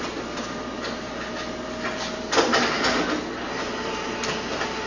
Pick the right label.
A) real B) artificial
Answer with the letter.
A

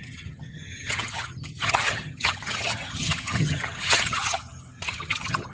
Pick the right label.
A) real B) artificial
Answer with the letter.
B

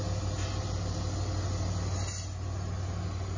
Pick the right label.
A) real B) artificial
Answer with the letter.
A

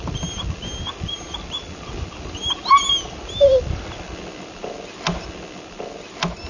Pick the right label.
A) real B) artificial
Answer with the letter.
A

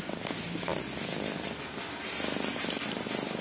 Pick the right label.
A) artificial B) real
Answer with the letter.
B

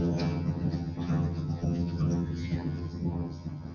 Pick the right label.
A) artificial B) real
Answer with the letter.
A